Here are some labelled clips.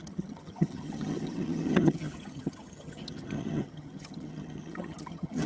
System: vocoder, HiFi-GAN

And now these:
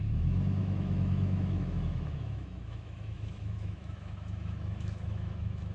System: autoencoder, DAC-VAE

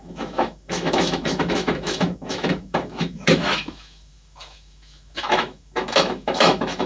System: autoencoder, DAC-VAE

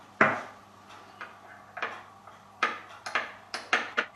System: none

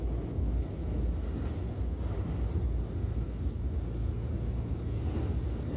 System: none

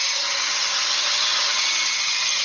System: vocoder, HiFi-GAN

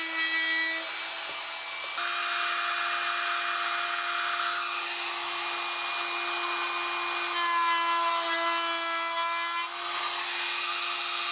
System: none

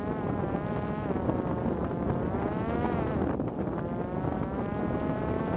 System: none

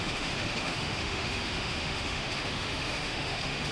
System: autoencoder, DAC-VAE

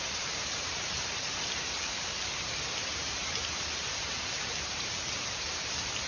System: vocoder, BigVGAN v2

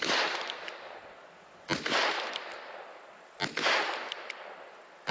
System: none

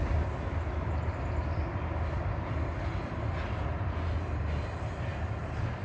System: none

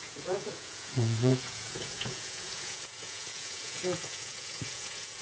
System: vocoder, Vocos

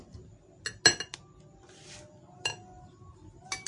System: none